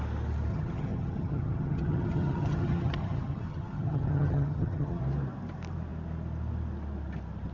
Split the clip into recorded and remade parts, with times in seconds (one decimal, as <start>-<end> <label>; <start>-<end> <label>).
0.0-0.5 recorded; 0.5-5.0 remade; 5.0-7.5 recorded